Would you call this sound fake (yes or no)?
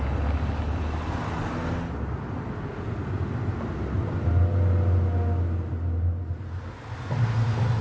no